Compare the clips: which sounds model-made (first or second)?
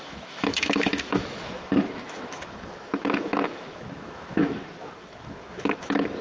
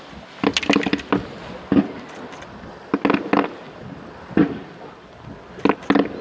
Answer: first